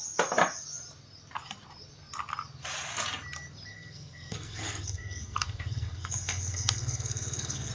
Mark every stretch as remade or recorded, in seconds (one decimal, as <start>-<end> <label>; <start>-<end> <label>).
0.0-3.7 recorded; 3.7-7.7 remade